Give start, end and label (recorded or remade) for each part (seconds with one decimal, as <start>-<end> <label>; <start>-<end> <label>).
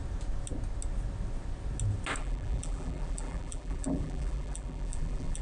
0.0-2.2 recorded; 2.2-5.4 remade